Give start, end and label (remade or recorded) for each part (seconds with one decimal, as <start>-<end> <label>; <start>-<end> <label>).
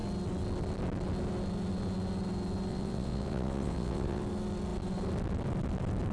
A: 0.0-2.7 recorded; 2.7-4.2 remade; 4.2-6.1 recorded